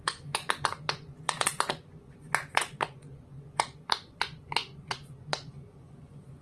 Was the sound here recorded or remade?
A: remade